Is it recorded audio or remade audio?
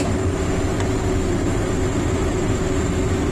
recorded